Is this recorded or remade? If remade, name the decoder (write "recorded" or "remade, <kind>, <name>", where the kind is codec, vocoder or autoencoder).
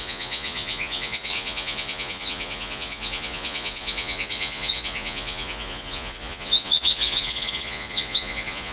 remade, vocoder, Vocos